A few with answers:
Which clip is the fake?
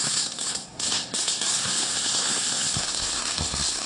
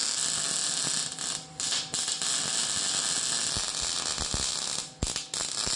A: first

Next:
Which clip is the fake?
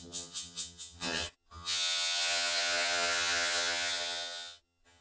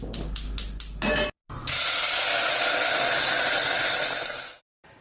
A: first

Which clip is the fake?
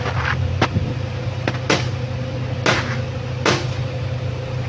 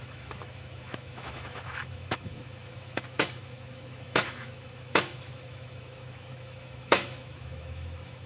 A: second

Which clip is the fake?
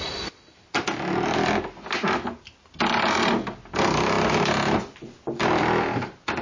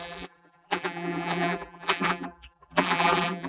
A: second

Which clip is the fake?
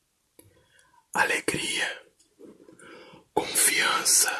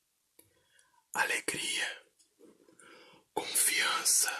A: first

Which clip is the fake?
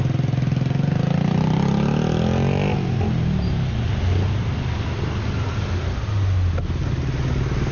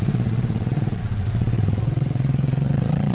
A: second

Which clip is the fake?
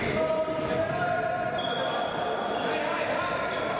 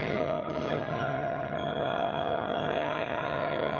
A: second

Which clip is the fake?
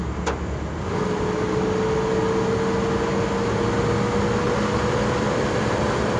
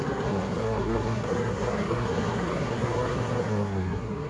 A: second